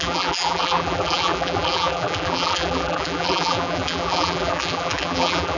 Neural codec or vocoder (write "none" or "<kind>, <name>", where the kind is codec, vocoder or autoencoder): vocoder, BigVGAN v2